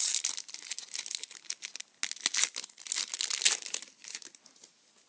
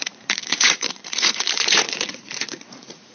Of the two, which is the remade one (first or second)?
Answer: second